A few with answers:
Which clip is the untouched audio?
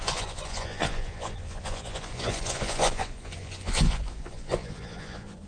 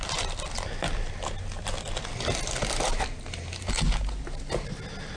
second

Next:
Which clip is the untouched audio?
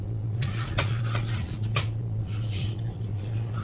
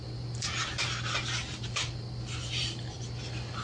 second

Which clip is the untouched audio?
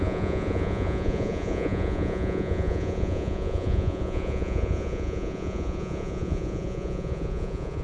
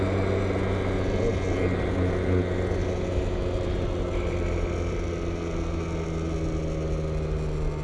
second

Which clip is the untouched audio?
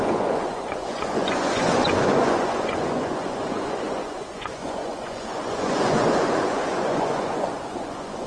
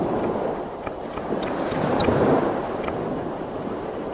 second